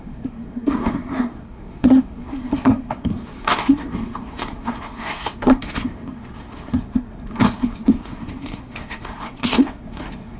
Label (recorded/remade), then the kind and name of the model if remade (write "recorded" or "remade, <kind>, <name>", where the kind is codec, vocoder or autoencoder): remade, codec, SNAC